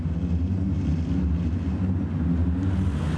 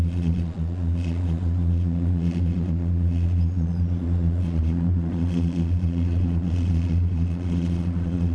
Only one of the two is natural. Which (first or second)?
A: first